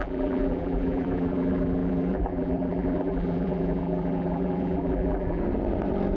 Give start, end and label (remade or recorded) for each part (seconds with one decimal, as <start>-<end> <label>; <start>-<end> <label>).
0.0-5.4 remade; 5.4-6.2 recorded